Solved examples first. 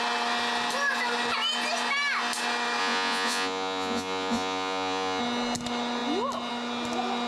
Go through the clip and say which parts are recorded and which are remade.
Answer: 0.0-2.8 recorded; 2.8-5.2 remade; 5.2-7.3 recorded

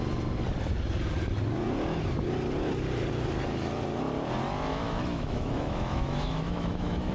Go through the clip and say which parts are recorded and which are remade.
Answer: 0.0-4.7 recorded; 4.7-7.1 remade

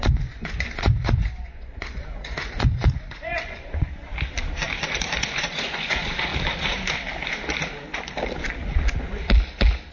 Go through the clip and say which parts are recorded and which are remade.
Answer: 0.0-4.1 remade; 4.1-5.2 recorded; 5.2-6.3 remade; 6.3-9.9 recorded

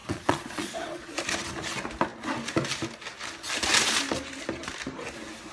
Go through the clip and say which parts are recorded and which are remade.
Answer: 0.0-1.2 remade; 1.2-5.5 recorded

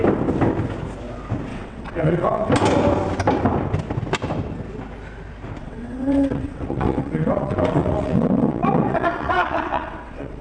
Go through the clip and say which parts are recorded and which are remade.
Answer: 0.0-1.5 recorded; 1.5-2.5 remade; 2.5-5.6 recorded; 5.6-10.4 remade

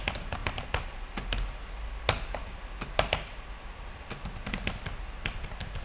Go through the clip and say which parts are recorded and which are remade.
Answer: 0.0-5.8 recorded